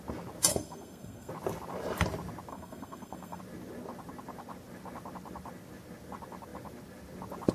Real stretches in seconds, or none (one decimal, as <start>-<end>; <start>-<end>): 0.0-0.5; 1.3-2.5; 3.4-7.5